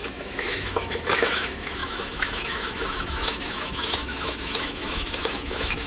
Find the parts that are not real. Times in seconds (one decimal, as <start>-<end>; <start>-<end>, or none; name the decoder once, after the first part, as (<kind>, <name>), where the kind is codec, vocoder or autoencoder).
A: 0.0-5.9 (autoencoder, DAC-VAE)